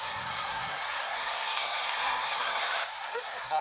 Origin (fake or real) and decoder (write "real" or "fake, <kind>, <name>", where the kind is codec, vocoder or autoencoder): fake, codec, SNAC